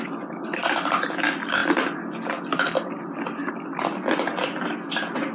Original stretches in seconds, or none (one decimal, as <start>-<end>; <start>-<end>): 0.0-5.3